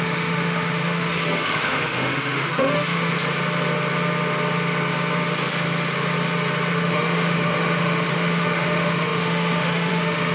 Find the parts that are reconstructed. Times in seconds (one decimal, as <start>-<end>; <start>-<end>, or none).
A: 0.0-3.1; 6.7-10.3